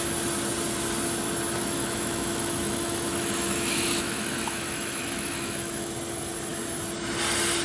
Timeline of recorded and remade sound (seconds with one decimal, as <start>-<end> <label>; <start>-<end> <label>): 0.0-1.6 recorded; 1.6-5.9 remade; 5.9-7.6 recorded